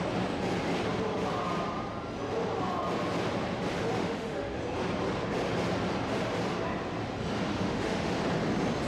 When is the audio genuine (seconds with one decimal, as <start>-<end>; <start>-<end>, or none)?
0.0-4.0; 4.6-7.5; 8.1-8.9